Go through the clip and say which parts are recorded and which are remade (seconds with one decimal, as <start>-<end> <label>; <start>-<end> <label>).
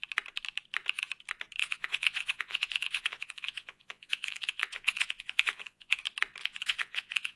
0.0-1.6 recorded; 1.6-6.0 remade; 6.0-6.4 recorded; 6.4-7.4 remade